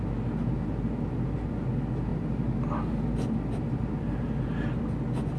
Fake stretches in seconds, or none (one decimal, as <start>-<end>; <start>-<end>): none